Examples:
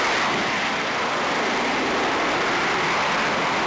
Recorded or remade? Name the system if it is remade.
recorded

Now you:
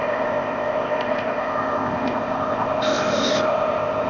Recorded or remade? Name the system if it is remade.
remade, codec, ZipCodec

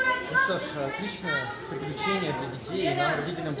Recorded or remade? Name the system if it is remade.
recorded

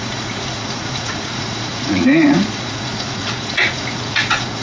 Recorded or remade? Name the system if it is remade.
remade, vocoder, Vocos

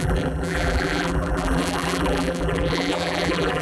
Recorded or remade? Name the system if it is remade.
remade, vocoder, BigVGAN v2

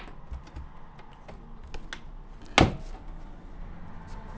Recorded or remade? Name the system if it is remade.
recorded